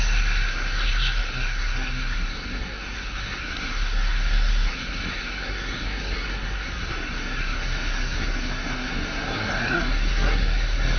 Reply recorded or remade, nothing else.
remade